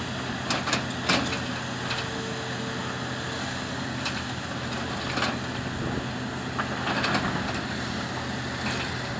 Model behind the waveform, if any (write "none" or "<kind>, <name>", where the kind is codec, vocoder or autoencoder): none